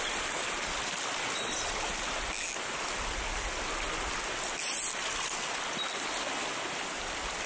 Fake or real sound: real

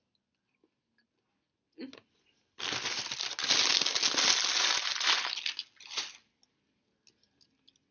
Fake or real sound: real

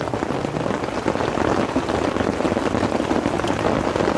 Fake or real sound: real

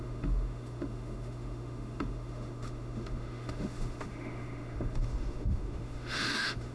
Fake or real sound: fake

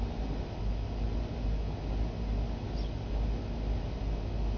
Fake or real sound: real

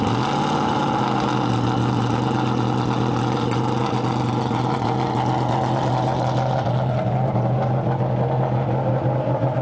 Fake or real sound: real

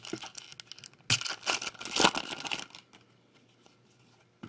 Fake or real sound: real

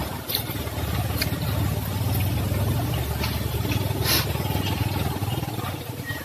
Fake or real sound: real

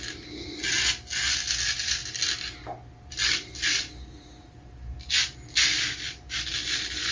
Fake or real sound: real